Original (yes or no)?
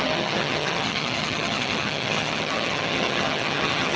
no